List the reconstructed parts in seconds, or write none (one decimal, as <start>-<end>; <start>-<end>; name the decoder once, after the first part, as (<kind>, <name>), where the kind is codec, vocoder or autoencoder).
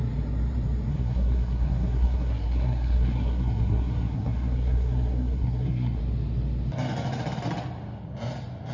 0.9-6.0 (codec, SNAC)